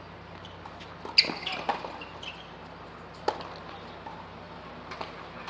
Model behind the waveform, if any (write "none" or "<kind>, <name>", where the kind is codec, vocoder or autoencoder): none